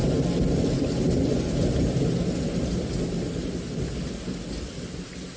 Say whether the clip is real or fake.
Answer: real